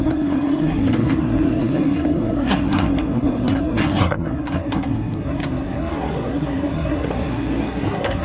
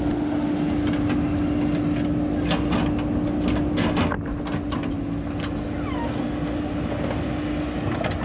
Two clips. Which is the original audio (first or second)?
second